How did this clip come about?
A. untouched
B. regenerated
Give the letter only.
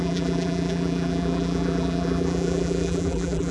B